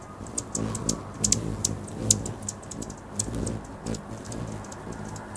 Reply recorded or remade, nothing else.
recorded